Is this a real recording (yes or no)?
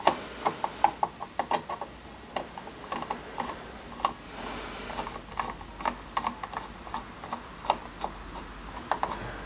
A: yes